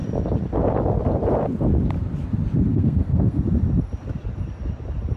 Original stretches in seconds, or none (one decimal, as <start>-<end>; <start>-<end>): 0.0-2.7; 3.4-5.2